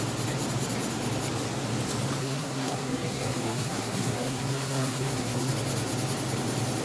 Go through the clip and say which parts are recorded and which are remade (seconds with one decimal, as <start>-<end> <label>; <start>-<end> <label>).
0.0-2.2 recorded; 2.2-5.5 remade; 5.5-6.8 recorded